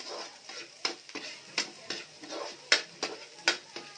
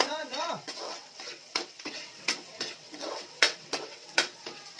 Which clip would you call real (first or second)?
first